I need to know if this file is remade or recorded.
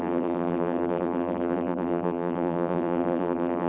remade